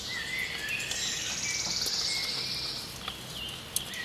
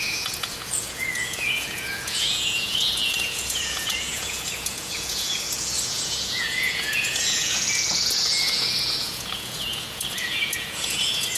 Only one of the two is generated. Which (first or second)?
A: second